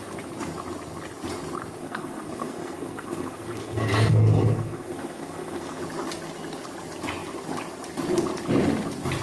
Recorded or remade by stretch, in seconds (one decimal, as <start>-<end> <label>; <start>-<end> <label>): 0.0-1.8 recorded; 1.8-5.8 remade; 5.8-9.2 recorded

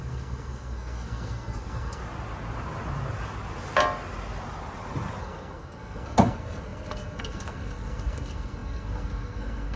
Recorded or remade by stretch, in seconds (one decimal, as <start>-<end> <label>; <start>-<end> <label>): 0.0-2.0 remade; 2.0-5.2 recorded; 5.2-9.8 remade

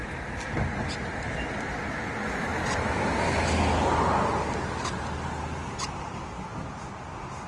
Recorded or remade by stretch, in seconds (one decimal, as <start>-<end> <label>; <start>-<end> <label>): 0.0-7.5 recorded

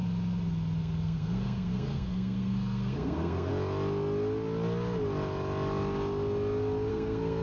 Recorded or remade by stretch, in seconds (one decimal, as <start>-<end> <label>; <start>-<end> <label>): 0.0-0.8 recorded; 0.8-3.5 remade; 3.5-6.9 recorded; 6.9-7.4 remade

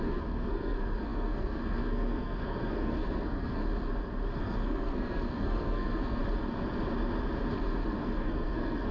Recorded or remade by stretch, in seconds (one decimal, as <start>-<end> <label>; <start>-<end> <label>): 0.0-3.6 remade; 3.6-4.4 recorded; 4.4-6.2 remade; 6.2-8.0 recorded; 8.0-8.9 remade

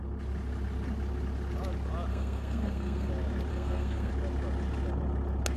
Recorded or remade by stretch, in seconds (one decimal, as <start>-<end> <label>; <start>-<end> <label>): 0.0-2.1 recorded; 2.1-3.1 remade; 3.1-3.5 recorded; 3.5-4.1 remade; 4.1-5.6 recorded